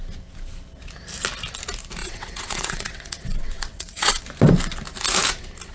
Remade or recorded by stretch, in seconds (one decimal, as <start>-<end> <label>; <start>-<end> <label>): 0.0-2.0 recorded; 2.0-4.2 remade; 4.2-5.7 recorded

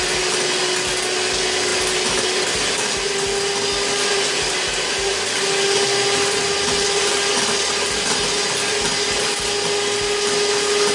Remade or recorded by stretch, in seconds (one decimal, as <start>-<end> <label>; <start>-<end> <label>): 0.0-10.9 recorded

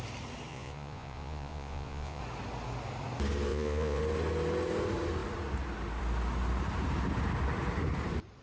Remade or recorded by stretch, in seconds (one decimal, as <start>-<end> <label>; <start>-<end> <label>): 0.0-0.5 recorded; 0.5-2.2 remade; 2.2-3.5 recorded; 3.5-4.0 remade; 4.0-8.4 recorded

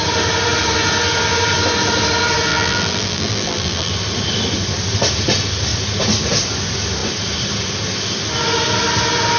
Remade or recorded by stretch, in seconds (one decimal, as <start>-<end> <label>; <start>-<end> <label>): 0.0-2.5 recorded; 2.5-3.9 remade; 3.9-9.4 recorded

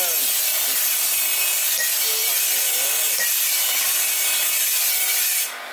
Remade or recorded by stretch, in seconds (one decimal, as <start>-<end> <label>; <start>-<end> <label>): 0.0-5.7 recorded

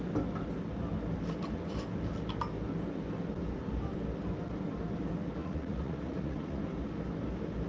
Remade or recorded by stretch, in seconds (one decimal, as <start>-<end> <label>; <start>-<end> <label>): 0.0-5.4 recorded; 5.4-6.6 remade; 6.6-7.7 recorded

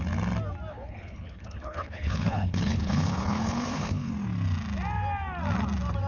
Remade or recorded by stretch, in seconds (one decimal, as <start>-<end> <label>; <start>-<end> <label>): 0.0-0.7 recorded; 0.7-4.1 remade; 4.1-6.1 recorded

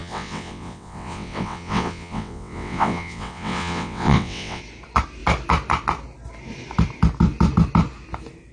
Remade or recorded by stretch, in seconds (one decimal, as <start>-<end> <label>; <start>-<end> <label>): 0.0-4.6 remade; 4.6-8.5 recorded